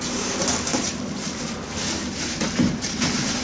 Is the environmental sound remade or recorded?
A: recorded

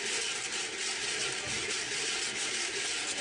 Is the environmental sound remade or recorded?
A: recorded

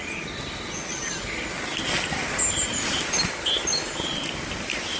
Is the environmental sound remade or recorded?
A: recorded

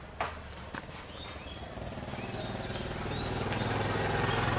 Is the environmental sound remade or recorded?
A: recorded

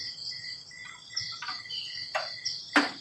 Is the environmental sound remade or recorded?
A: recorded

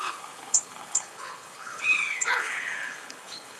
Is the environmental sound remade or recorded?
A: remade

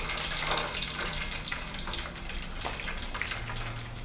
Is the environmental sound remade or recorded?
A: recorded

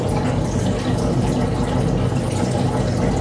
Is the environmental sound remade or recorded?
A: recorded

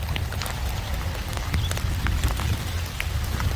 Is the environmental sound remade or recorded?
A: recorded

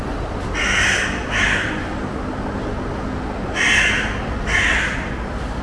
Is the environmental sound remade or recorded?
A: recorded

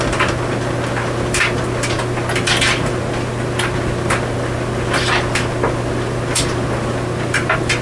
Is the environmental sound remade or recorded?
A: recorded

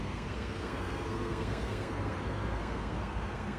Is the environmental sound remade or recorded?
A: remade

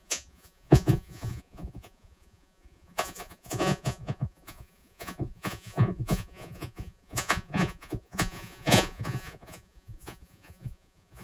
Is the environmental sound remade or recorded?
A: remade